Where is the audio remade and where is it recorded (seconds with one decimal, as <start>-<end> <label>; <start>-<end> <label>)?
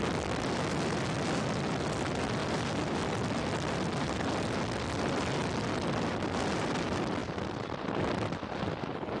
0.0-2.4 recorded; 2.4-4.3 remade; 4.3-9.2 recorded